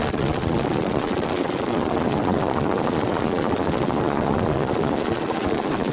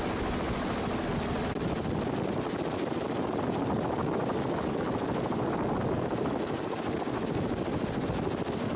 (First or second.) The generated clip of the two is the first